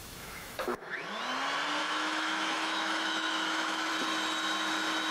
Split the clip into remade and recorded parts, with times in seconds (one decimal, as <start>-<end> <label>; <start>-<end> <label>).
0.0-0.9 remade; 0.9-1.8 recorded; 1.8-3.9 remade; 3.9-5.1 recorded